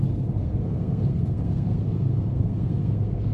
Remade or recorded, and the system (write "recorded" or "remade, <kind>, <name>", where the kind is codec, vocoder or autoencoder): remade, codec, SNAC